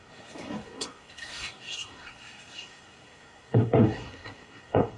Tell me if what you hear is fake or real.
fake